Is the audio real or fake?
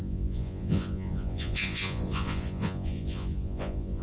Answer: fake